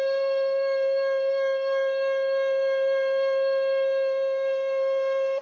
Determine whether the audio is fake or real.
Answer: fake